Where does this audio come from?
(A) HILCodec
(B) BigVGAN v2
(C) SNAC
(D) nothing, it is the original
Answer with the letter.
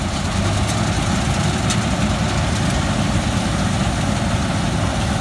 D